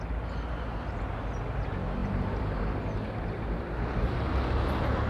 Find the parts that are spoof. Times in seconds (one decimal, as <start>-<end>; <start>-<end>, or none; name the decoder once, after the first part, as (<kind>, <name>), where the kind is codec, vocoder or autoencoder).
2.0-2.6 (vocoder, BigVGAN v2)